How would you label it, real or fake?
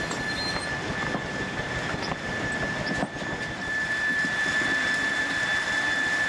real